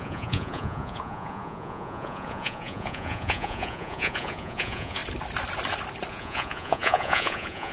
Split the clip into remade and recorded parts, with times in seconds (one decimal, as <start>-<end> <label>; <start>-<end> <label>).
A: 0.0-5.0 remade; 5.0-6.1 recorded; 6.1-7.7 remade